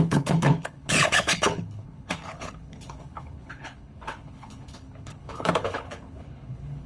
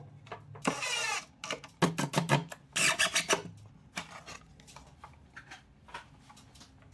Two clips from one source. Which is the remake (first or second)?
first